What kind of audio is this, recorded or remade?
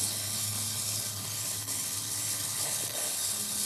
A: remade